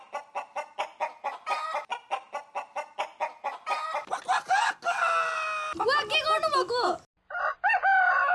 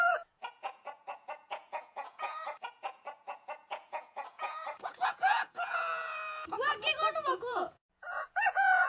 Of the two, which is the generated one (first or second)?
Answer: second